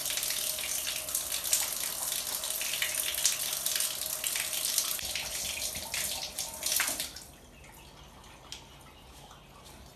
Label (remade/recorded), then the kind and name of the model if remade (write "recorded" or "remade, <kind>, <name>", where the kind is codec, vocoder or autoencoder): recorded